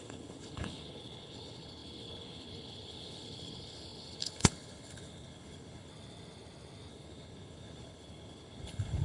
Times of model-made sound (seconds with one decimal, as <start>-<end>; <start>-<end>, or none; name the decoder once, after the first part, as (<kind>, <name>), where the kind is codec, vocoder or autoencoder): 0.0-5.9 (codec, HILCodec); 6.9-9.0